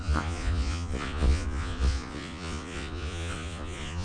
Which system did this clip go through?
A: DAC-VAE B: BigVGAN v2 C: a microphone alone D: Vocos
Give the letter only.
D